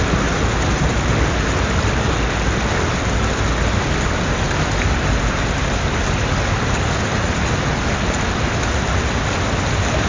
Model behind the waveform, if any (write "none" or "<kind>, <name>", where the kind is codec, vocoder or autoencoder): none